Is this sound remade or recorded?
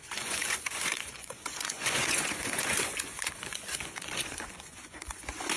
remade